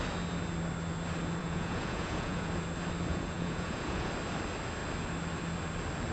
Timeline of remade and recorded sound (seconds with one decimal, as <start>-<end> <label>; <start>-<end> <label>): 0.0-1.4 recorded; 1.4-2.5 remade; 2.5-3.1 recorded; 3.1-4.1 remade; 4.1-6.1 recorded